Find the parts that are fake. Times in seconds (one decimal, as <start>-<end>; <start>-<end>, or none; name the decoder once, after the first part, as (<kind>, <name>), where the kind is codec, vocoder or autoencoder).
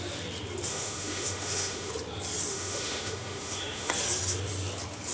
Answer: 0.7-1.9 (autoencoder, DAC-VAE); 2.5-3.9